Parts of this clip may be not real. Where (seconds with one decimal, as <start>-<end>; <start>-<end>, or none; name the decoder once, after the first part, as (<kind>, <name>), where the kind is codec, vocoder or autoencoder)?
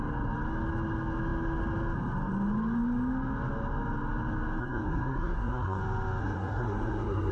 4.6-5.8 (codec, SNAC); 6.2-7.3